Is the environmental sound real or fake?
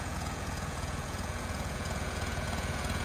fake